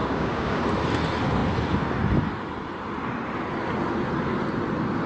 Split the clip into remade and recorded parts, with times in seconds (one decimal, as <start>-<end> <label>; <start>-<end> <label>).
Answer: 0.0-0.6 remade; 0.6-5.1 recorded